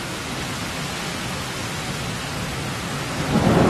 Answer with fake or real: real